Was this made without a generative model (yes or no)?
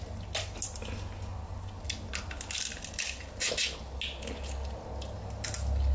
yes